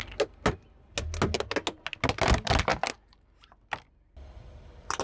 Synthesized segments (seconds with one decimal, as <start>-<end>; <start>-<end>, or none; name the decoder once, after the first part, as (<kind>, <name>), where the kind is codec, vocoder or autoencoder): none